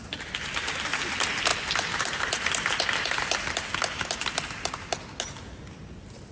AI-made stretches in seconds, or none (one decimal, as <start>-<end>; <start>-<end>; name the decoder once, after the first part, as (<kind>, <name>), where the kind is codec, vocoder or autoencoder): none